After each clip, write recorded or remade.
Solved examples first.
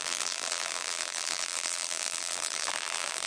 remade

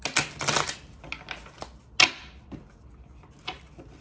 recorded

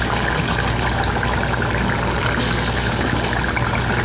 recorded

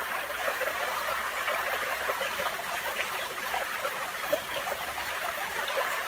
remade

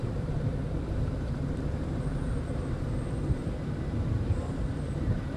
remade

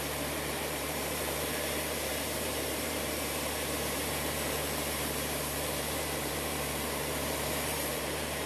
remade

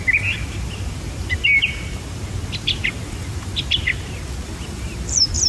remade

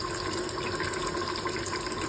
recorded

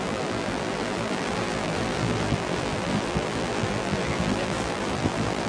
remade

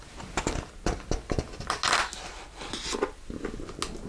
recorded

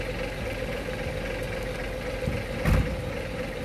recorded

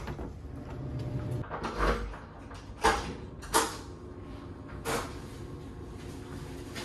recorded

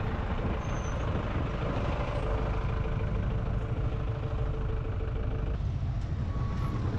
recorded